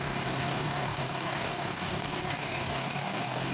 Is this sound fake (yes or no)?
yes